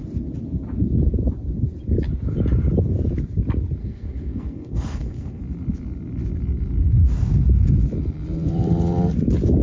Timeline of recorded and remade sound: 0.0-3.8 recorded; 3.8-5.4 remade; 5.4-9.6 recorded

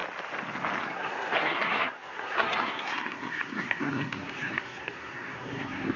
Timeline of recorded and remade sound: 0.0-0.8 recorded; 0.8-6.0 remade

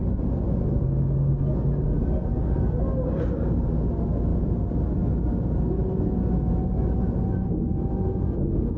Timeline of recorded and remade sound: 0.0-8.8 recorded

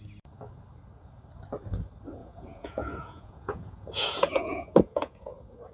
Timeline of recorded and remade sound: 0.0-2.2 recorded; 2.2-5.7 remade

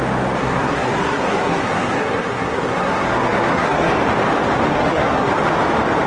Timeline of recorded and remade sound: 0.0-0.4 recorded; 0.4-3.9 remade; 3.9-4.7 recorded; 4.7-5.3 remade; 5.3-6.1 recorded

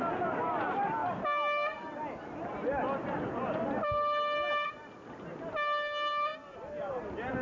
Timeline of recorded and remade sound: 0.0-7.4 recorded

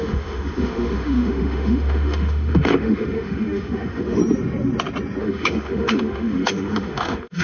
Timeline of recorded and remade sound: 0.0-4.2 remade; 4.2-5.2 recorded; 5.2-7.4 remade